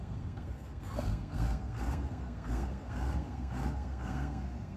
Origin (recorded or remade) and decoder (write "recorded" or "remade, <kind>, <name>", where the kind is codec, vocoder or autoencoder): remade, codec, SNAC